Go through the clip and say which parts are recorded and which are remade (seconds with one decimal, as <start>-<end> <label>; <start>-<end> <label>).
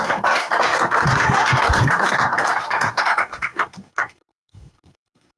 0.0-5.4 remade